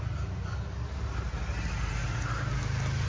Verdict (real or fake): real